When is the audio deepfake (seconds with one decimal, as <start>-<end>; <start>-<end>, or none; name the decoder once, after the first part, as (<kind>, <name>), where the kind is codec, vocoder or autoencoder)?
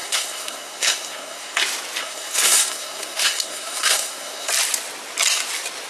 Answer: 0.0-1.6 (codec, SNAC); 2.0-4.5